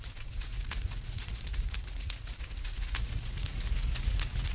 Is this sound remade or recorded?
remade